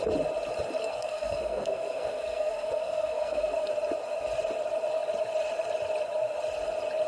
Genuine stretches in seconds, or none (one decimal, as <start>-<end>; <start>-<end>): 0.0-0.8; 3.7-7.1